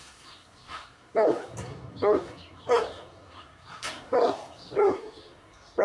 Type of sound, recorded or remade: remade